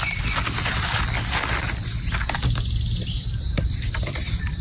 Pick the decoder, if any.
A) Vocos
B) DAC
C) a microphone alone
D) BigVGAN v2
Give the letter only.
C